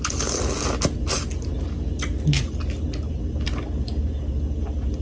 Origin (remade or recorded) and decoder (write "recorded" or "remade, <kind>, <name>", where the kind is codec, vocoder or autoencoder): recorded